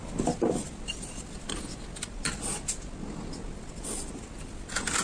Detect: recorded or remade recorded